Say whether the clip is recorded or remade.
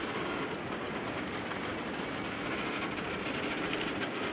recorded